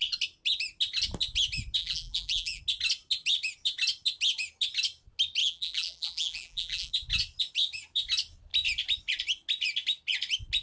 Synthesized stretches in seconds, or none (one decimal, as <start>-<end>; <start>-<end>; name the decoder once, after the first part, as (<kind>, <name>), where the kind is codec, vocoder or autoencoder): 1.8-2.6 (vocoder, BigVGAN v2); 5.4-6.9

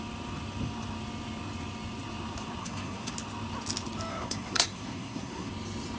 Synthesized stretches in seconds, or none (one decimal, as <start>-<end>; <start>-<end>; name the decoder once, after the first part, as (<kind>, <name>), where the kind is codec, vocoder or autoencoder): 2.6-3.1 (codec, SNAC); 4.1-5.5

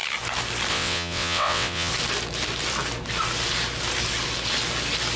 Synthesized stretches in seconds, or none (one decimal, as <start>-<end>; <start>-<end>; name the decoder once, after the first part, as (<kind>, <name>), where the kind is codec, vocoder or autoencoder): 0.7-1.9 (vocoder, WaveNeXt)

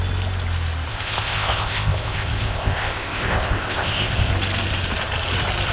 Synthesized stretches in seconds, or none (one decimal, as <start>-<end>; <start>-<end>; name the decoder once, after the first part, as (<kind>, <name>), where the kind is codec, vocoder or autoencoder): 0.9-4.3 (codec, ZipCodec)

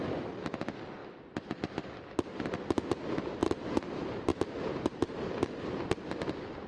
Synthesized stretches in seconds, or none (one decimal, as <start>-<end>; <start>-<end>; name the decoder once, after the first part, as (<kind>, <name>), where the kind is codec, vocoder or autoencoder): 3.4-3.9 (vocoder, BigVGAN v2); 4.3-5.1

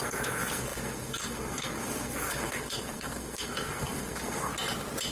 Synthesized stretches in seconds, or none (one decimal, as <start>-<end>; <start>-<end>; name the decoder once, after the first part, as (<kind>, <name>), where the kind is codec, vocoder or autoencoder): 0.0-4.5 (codec, SNAC)

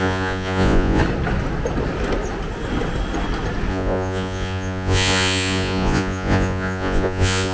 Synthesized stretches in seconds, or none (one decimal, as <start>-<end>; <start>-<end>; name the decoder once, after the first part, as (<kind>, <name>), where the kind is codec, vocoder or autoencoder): 0.0-1.0 (vocoder, Vocos); 3.7-7.5

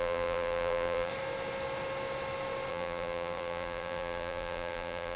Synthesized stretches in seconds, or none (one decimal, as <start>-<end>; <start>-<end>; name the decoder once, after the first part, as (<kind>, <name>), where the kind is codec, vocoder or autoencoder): 0.0-1.1 (vocoder, BigVGAN v2); 2.7-5.2